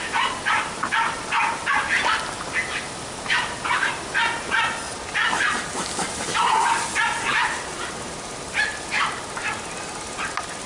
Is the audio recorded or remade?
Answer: recorded